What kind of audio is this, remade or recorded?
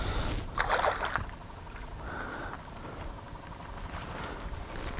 recorded